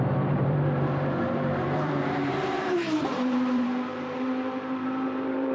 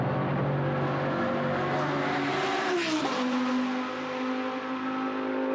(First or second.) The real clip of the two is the second